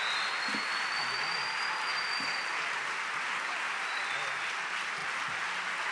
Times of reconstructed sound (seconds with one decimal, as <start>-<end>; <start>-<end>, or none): none